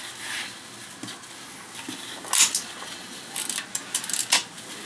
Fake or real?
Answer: real